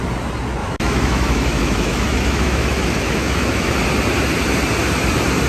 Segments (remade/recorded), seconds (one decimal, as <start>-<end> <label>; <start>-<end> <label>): 0.0-0.6 recorded; 0.6-3.7 remade; 3.7-5.5 recorded

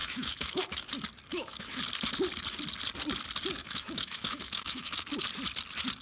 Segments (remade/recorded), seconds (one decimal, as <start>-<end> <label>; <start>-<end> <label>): 0.0-0.9 remade; 0.9-1.3 recorded; 1.3-1.8 remade; 1.8-3.6 recorded; 3.6-5.1 remade; 5.1-6.0 recorded

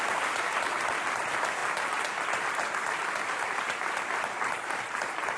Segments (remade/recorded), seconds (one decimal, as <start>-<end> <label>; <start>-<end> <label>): 0.0-5.4 recorded

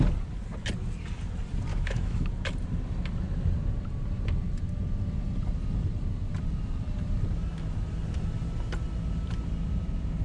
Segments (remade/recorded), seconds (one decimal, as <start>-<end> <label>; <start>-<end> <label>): 0.0-1.7 recorded; 1.7-2.3 remade; 2.3-10.2 recorded

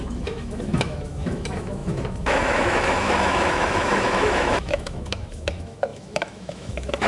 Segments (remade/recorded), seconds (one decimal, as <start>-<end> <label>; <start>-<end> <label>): 0.0-7.1 remade

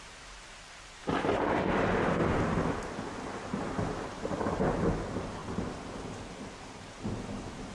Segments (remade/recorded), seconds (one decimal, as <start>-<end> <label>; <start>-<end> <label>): 0.0-7.7 recorded

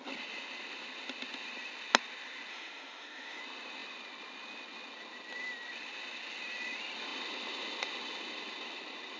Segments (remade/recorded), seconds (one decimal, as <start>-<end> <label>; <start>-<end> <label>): 0.0-2.5 recorded; 2.5-3.4 remade; 3.4-9.2 recorded

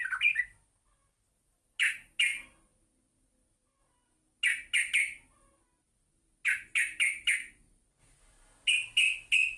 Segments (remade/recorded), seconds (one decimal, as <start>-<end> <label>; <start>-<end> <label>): 0.0-9.6 recorded